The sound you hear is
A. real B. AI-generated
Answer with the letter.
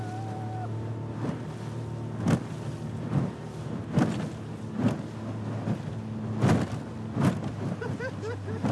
A